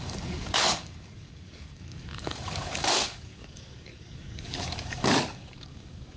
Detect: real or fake fake